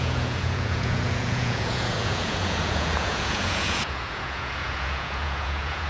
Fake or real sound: fake